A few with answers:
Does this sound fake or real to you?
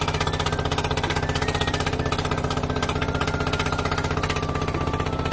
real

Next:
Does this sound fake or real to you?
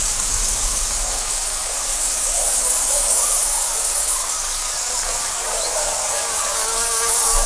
fake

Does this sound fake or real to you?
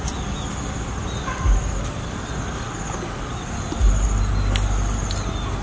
real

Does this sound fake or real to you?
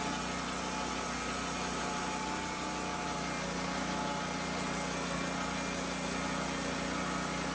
real